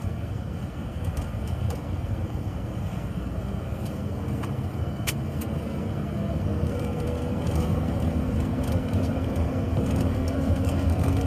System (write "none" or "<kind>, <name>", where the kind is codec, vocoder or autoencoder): codec, SNAC